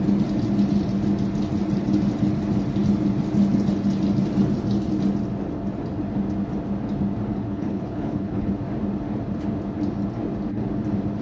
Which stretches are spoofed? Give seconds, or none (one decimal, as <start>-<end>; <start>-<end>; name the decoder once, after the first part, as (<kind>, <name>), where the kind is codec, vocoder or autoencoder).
7.3-8.5 (codec, HILCodec)